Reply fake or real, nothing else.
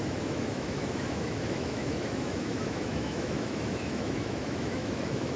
fake